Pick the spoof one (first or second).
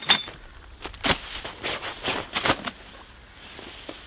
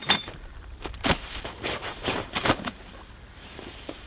second